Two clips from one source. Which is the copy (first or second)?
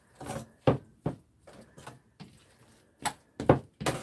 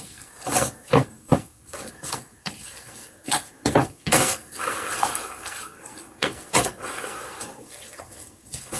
second